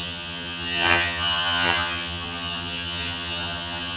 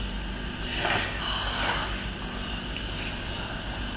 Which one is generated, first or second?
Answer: first